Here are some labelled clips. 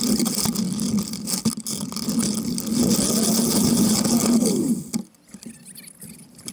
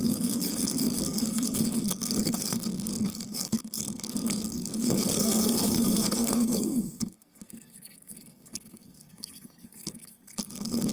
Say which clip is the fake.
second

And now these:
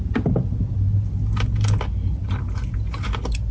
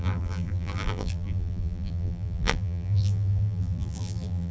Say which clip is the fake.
second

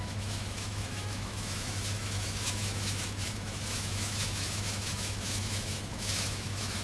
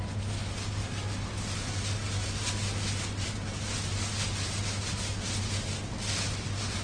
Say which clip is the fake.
first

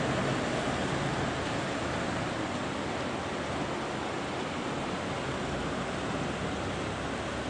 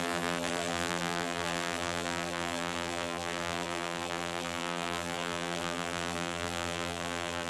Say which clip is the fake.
second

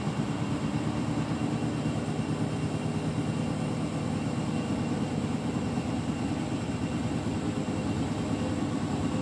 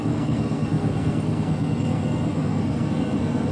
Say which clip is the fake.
second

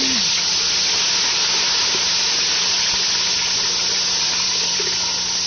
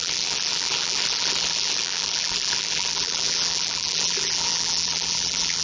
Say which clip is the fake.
second